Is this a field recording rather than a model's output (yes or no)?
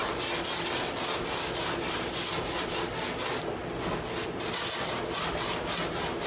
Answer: yes